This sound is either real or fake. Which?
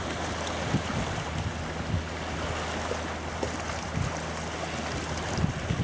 real